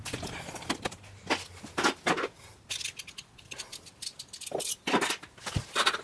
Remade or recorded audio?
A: recorded